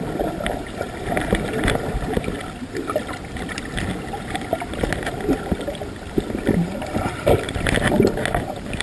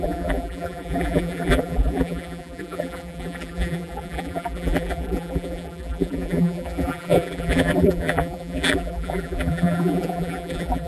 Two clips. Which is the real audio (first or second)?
first